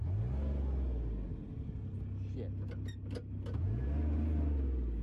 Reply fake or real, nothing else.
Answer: real